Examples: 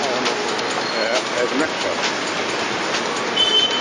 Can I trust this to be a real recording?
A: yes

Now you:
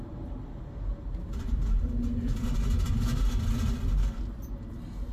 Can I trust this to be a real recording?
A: yes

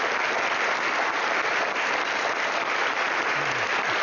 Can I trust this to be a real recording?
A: yes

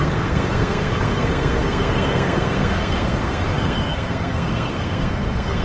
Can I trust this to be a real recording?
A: no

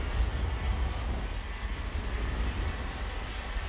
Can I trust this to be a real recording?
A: yes